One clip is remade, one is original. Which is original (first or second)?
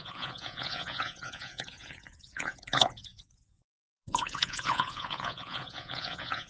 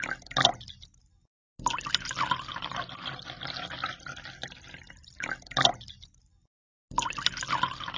second